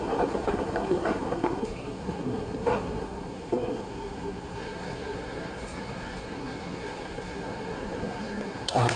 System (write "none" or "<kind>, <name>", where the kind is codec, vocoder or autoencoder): codec, SNAC